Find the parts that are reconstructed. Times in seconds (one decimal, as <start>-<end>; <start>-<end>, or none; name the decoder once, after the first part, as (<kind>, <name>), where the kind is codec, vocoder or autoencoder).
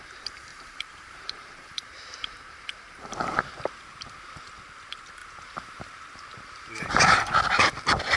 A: 0.5-3.4 (vocoder, BigVGAN v2); 5.2-7.7